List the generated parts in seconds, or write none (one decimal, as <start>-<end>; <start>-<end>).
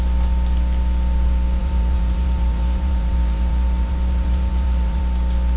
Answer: 1.6-5.0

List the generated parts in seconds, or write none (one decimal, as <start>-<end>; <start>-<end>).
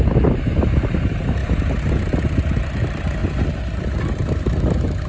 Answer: none